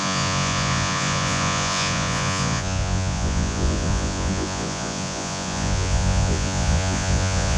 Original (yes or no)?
no